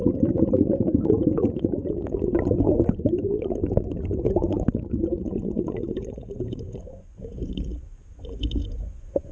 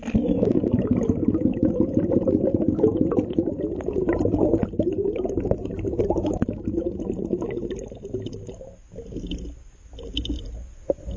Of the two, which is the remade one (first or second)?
first